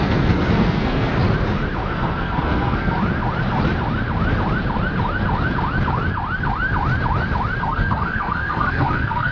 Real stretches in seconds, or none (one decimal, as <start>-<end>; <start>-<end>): 1.1-1.9; 3.0-7.6